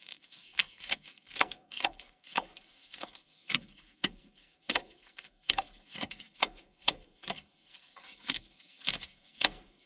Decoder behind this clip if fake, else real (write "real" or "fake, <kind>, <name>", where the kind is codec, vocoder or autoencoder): fake, codec, SNAC